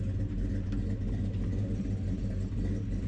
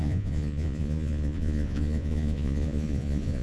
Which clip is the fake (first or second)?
second